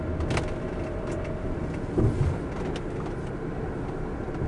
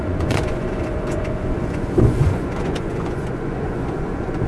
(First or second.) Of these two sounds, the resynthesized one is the second